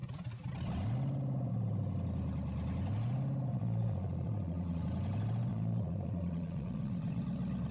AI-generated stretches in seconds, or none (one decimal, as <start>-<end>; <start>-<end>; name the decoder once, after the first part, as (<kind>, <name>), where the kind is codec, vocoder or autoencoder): 3.5-4.8 (vocoder, Vocos); 5.5-7.2